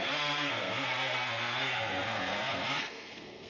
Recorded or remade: remade